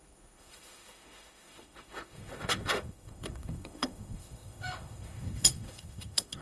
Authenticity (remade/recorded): remade